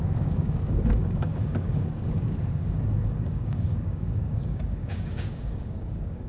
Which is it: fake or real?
fake